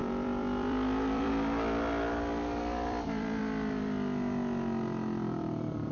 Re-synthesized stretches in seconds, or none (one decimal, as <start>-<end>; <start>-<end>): 0.0-1.3; 2.1-3.4